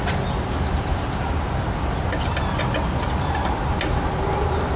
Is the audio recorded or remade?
recorded